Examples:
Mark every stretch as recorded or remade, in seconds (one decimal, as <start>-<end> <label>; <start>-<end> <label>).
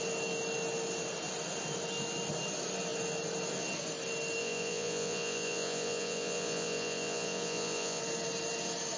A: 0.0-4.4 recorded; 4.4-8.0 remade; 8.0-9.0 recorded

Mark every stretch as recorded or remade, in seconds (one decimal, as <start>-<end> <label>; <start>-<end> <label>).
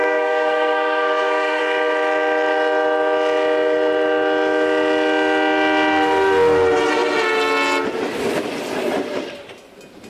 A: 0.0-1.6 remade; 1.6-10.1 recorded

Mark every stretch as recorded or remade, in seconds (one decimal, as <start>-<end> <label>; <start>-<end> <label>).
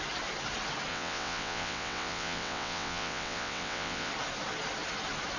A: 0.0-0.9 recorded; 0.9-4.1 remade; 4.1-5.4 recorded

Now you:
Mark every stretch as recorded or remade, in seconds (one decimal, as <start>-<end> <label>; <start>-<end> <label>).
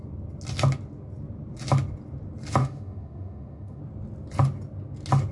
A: 0.0-2.6 recorded; 2.6-3.8 remade; 3.8-5.3 recorded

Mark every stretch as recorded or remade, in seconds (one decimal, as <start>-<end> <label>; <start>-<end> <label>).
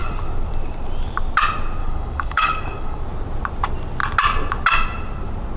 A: 0.0-1.8 recorded; 1.8-3.0 remade; 3.0-5.6 recorded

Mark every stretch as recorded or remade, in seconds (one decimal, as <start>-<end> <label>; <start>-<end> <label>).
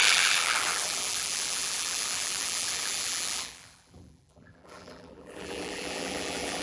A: 0.0-6.6 remade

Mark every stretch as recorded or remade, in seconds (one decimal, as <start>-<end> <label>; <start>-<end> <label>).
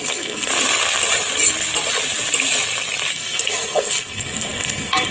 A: 0.0-0.5 remade; 0.5-3.1 recorded; 3.1-5.1 remade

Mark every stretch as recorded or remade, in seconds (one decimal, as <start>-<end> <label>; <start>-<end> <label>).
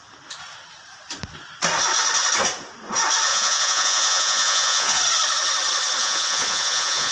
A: 0.0-3.3 recorded; 3.3-5.0 remade; 5.0-6.0 recorded; 6.0-7.1 remade